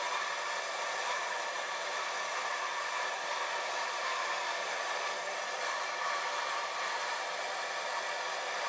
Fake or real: fake